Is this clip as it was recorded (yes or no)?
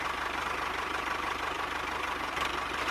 no